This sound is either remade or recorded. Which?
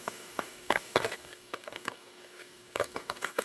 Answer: remade